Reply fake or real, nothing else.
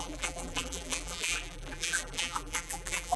fake